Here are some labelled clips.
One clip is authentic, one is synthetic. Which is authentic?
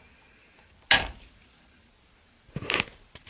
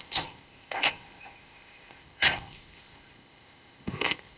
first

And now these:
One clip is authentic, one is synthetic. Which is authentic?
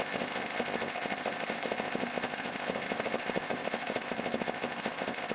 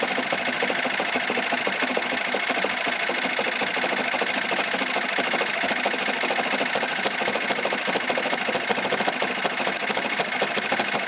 second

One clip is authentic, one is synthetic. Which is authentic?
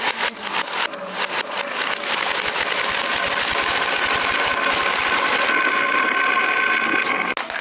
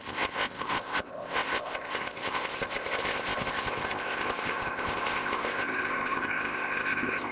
first